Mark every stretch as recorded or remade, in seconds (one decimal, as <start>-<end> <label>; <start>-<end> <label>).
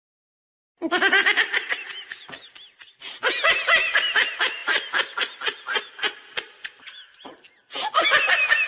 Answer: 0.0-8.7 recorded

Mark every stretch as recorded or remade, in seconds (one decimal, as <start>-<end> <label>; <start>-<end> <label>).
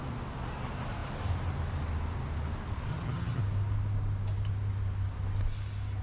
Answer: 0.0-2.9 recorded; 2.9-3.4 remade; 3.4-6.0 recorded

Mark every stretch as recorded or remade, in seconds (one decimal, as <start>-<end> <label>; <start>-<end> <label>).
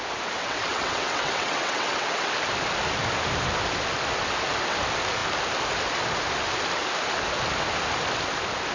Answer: 0.0-0.4 recorded; 0.4-2.3 remade; 2.3-8.7 recorded